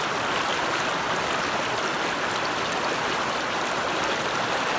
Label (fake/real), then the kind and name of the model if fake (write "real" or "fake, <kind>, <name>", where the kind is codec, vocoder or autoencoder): real